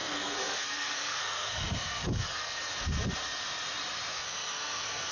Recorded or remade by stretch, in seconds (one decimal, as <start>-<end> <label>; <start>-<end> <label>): 0.0-2.6 remade; 2.6-4.1 recorded; 4.1-5.1 remade